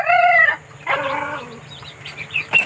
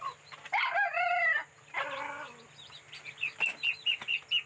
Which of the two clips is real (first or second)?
second